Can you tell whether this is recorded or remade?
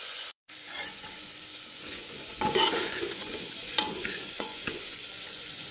remade